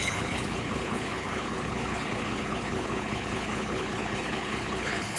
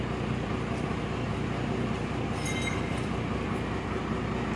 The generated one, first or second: first